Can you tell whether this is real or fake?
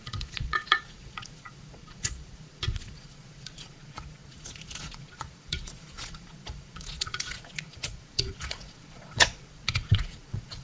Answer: fake